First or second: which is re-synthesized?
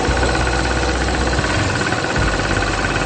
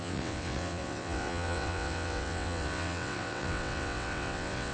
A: second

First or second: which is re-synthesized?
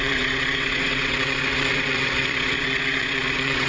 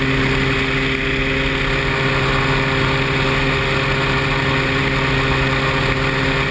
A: first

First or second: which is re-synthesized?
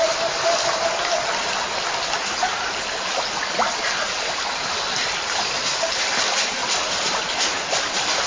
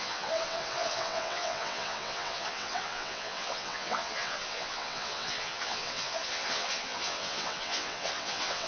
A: second